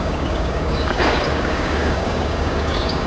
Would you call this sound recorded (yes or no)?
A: no